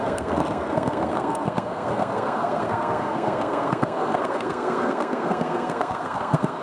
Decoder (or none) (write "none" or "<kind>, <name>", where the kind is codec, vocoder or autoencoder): codec, SNAC